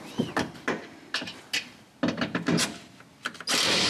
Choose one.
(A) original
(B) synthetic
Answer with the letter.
A